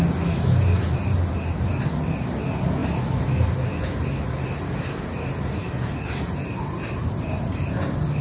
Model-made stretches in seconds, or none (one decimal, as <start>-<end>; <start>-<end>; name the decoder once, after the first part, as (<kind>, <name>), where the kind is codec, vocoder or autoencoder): 2.8-7.7 (vocoder, BigVGAN v2)